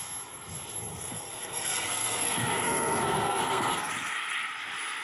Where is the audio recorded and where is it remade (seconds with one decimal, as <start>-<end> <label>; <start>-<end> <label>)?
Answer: 0.0-0.9 recorded; 0.9-3.9 remade; 3.9-5.0 recorded